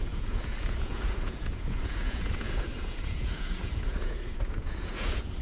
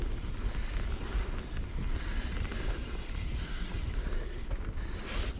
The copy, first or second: first